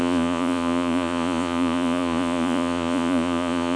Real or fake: fake